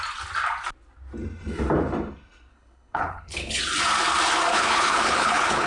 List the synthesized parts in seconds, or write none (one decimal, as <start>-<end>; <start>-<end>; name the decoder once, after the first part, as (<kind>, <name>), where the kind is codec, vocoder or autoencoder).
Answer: 2.5-3.6 (codec, HILCodec); 4.5-5.7